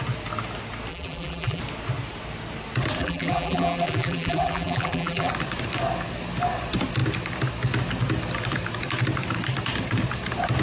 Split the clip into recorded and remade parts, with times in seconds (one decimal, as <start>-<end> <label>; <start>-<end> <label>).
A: 0.0-0.9 recorded; 0.9-1.6 remade; 1.6-3.0 recorded; 3.0-5.3 remade; 5.3-10.6 recorded